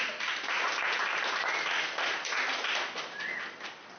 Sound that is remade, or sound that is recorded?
recorded